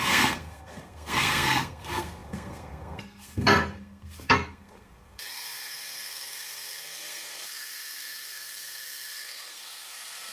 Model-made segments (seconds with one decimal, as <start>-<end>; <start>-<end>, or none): 0.0-10.3